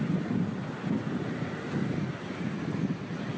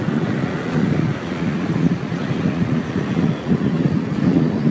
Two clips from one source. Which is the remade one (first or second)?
second